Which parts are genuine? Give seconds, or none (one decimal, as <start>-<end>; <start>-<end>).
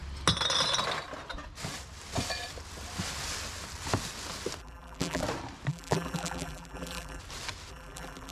0.0-4.6; 5.2-5.7; 7.2-7.7